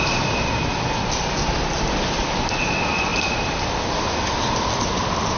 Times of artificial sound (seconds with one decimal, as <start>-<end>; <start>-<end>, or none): 3.1-3.7